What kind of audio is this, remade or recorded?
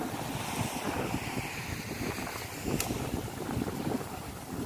recorded